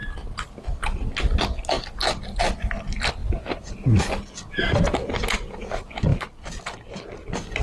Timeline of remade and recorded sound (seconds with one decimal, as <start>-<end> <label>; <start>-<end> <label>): 0.0-7.6 recorded